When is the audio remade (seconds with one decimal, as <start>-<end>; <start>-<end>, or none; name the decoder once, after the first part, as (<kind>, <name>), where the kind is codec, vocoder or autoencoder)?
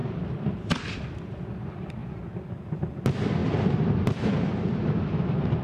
0.0-1.0 (vocoder, BigVGAN v2)